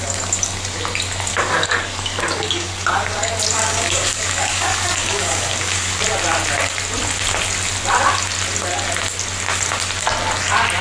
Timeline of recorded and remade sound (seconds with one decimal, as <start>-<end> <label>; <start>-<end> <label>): 0.0-1.3 recorded; 1.3-6.0 remade; 6.0-10.8 recorded

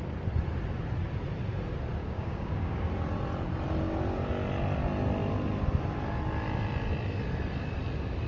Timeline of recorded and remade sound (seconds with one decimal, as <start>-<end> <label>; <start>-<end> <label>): 0.0-2.0 recorded; 2.0-2.9 remade; 2.9-8.3 recorded

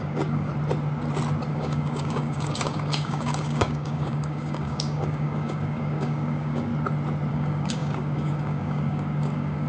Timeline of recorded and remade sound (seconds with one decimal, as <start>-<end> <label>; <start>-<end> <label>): 0.0-0.5 remade; 0.5-1.5 recorded; 1.5-6.7 remade; 6.7-7.3 recorded; 7.3-9.7 remade

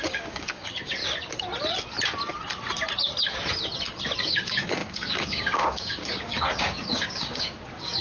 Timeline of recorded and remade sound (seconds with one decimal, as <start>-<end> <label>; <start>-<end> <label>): 0.0-1.0 remade; 1.0-4.2 recorded; 4.2-8.0 remade